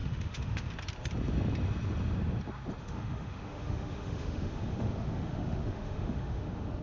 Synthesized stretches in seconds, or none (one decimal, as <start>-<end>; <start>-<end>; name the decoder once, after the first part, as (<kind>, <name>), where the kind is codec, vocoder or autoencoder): 0.0-0.7 (autoencoder, DAC-VAE); 2.8-6.8